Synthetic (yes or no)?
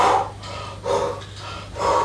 no